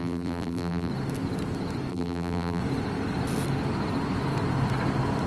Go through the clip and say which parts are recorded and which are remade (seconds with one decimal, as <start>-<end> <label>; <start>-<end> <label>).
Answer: 0.0-0.9 remade; 0.9-1.9 recorded; 1.9-2.6 remade; 2.6-5.3 recorded